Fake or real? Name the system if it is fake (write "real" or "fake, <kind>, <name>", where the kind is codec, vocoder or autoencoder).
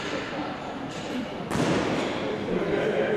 fake, vocoder, BigVGAN v2